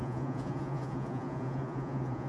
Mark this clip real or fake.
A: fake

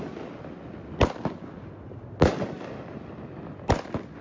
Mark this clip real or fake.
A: real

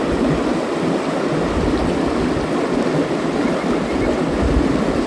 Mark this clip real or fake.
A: real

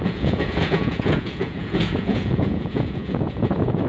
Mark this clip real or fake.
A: fake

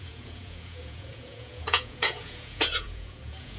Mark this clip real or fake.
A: fake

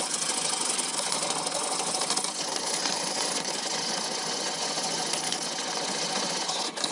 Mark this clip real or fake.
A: fake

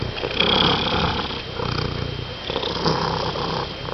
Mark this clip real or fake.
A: real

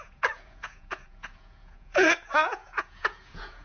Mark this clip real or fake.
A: fake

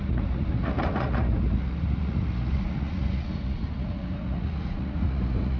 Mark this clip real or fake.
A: fake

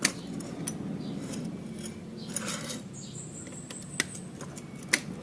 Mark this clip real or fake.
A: real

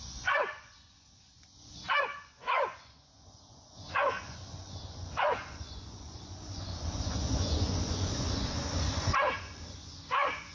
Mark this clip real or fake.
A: fake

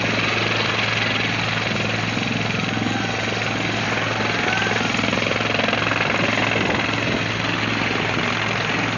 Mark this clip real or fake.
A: real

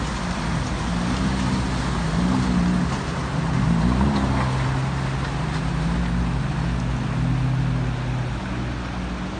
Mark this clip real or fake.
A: real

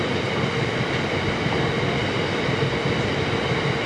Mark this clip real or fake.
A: real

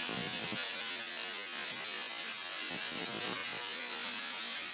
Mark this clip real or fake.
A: real